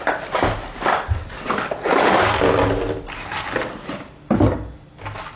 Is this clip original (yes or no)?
yes